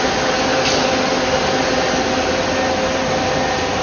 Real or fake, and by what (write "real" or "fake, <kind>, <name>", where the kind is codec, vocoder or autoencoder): real